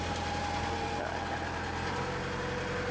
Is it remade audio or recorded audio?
recorded